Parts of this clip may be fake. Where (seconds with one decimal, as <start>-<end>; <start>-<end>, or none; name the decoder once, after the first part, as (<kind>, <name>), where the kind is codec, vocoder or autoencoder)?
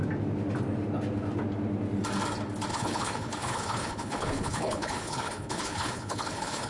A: 2.7-6.7 (codec, HILCodec)